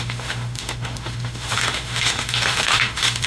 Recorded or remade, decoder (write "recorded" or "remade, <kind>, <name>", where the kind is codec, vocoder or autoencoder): remade, autoencoder, DAC-VAE